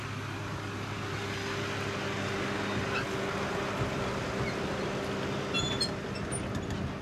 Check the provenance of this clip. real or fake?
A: real